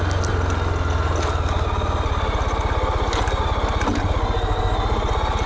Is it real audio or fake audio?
real